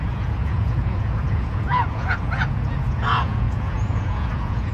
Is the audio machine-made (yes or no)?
yes